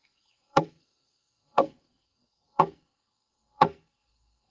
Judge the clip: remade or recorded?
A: remade